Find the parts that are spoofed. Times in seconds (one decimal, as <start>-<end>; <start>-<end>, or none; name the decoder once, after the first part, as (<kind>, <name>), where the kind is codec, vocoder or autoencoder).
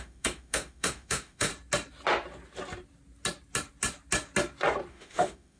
0.0-1.5 (autoencoder, DAC-VAE); 4.9-5.6